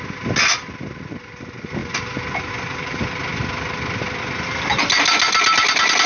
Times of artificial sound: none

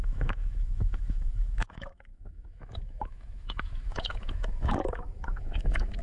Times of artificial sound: 0.0-6.0 (autoencoder, DAC-VAE)

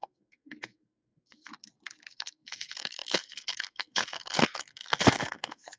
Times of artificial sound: 0.0-1.5 (codec, SNAC); 2.1-5.8

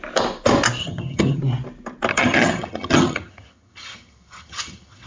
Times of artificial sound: 0.8-1.4 (vocoder, HiFi-GAN); 2.1-5.1

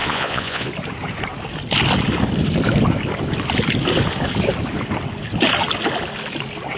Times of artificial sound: 0.0-0.7 (vocoder, Vocos)

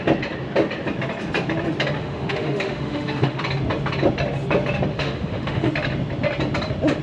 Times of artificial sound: 2.0-3.4 (autoencoder, DAC-VAE); 4.9-5.7

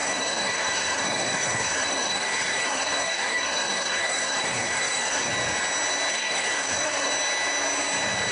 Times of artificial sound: 0.0-5.3 (codec, SNAC); 6.1-7.1

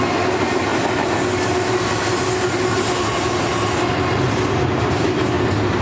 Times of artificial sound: none